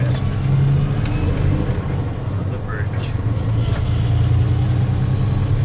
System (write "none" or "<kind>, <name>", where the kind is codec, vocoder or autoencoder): none